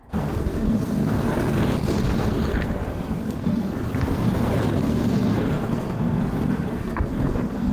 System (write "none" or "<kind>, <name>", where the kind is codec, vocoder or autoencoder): codec, SNAC